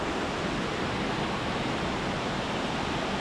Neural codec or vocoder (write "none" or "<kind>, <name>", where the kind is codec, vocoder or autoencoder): none